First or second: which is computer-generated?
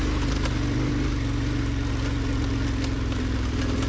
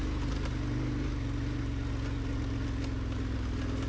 first